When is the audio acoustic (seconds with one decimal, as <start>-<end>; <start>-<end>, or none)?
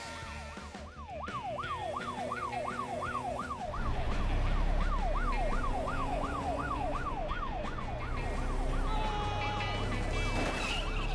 0.0-1.8; 4.2-5.5; 8.2-11.1